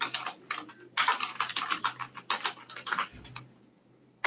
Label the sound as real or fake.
real